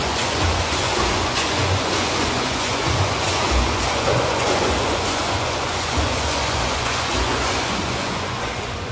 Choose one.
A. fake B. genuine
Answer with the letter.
A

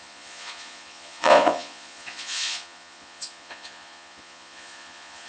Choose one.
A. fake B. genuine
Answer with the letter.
A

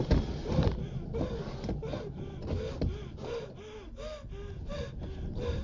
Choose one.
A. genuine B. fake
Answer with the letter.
A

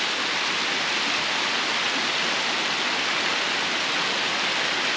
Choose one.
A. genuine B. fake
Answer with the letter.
A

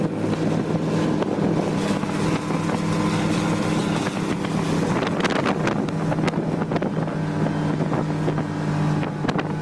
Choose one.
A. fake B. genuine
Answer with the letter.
B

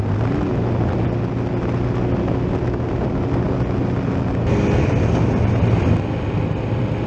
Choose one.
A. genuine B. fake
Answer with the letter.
A